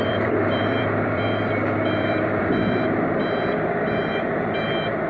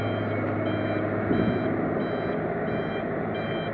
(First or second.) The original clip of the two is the second